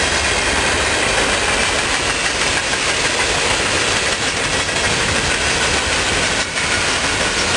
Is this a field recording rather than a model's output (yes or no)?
yes